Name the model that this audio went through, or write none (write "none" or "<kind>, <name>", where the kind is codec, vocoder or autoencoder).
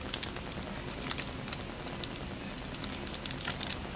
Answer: none